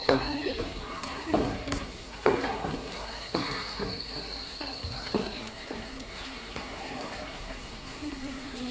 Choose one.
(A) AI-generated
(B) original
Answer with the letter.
A